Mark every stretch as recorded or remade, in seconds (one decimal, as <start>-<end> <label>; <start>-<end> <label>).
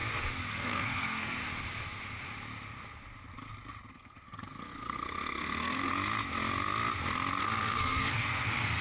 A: 0.0-0.5 recorded; 0.5-1.4 remade; 1.4-3.9 recorded; 3.9-5.9 remade; 5.9-7.4 recorded; 7.4-8.8 remade